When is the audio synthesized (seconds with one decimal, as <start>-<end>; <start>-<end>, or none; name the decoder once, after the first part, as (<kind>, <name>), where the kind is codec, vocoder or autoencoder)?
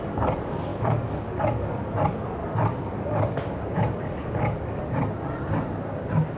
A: 0.7-1.9 (codec, DAC); 2.4-4.8